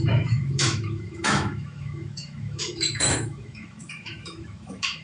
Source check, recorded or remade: remade